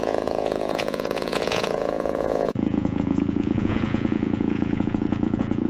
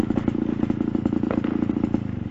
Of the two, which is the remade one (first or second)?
first